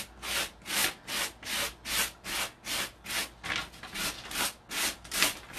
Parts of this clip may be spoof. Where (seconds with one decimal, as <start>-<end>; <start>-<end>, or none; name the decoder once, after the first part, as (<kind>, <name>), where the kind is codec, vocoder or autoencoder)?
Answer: none